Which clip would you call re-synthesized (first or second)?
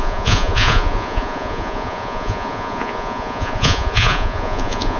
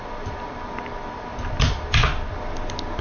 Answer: first